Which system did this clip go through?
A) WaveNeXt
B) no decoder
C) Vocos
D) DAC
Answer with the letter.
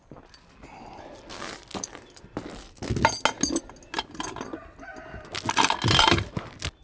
B